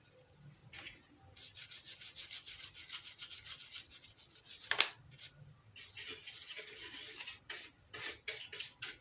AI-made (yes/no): no